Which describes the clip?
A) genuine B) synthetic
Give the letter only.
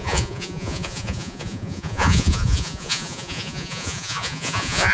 B